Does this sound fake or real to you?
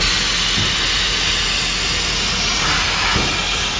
real